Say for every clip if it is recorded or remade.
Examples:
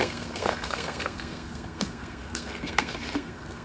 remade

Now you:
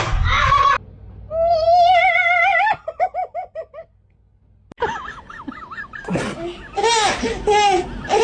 recorded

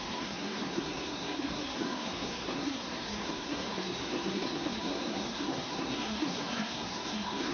remade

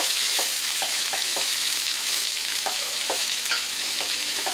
remade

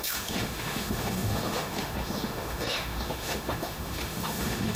remade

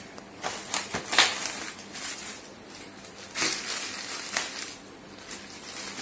recorded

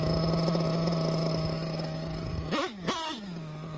recorded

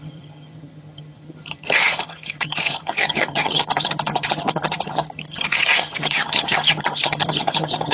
remade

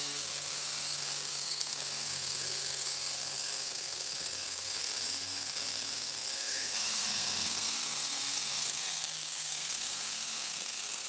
remade